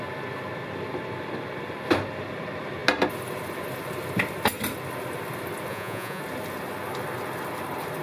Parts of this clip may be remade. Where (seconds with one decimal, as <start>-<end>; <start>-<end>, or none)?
5.7-6.2